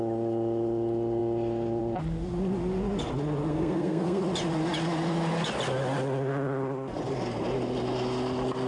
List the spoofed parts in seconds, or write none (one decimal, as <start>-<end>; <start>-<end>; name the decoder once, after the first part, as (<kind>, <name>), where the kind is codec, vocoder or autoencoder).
3.5-4.2 (codec, SNAC)